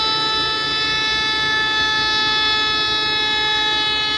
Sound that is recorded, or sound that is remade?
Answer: recorded